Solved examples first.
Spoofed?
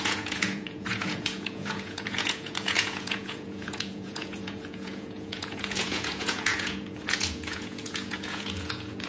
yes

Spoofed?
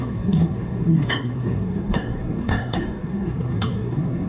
yes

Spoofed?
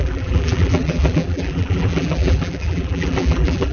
yes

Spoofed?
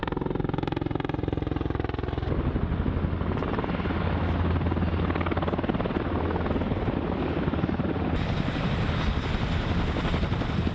no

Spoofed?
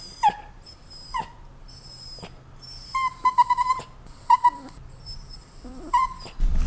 yes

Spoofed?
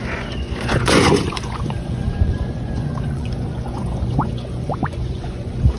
yes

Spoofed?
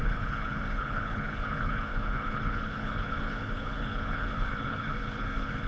yes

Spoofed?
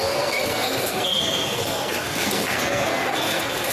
yes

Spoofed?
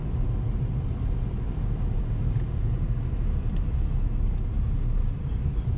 no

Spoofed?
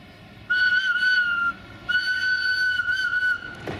no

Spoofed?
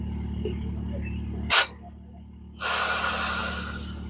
no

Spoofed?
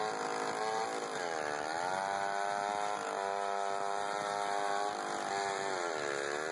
no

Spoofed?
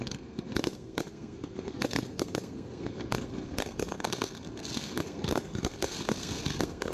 yes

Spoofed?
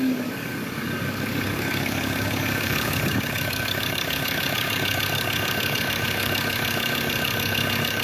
yes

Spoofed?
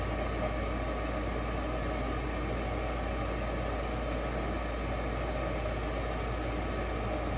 no